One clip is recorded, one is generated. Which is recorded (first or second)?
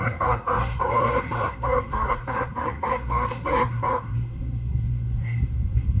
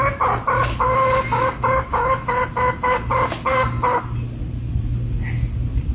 second